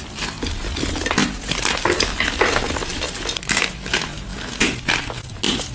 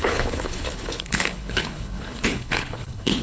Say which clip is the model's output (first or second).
second